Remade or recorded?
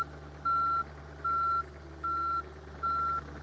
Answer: recorded